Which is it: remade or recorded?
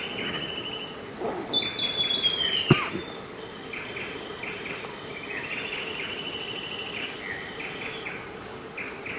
recorded